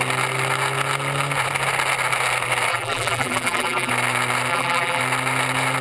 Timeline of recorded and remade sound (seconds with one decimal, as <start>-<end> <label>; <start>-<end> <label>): 0.0-2.7 recorded; 2.7-3.9 remade; 3.9-4.5 recorded; 4.5-5.0 remade; 5.0-5.8 recorded